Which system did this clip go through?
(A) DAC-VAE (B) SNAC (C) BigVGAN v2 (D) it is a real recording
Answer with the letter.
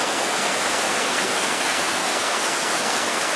B